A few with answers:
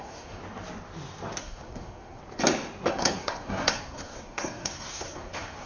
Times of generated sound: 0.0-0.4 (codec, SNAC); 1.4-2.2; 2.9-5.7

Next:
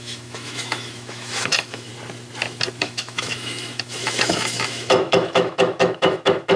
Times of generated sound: 0.0-1.9 (autoencoder, DAC-VAE); 2.8-6.6

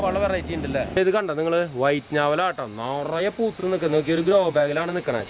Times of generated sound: 3.6-5.3 (vocoder, Vocos)

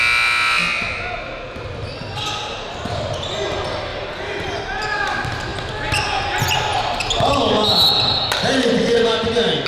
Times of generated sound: 3.9-4.6 (vocoder, BigVGAN v2)

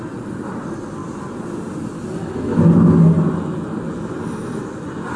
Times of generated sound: none